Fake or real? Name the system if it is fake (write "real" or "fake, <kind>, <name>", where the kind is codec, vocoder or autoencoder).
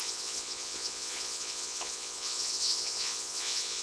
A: fake, vocoder, Vocos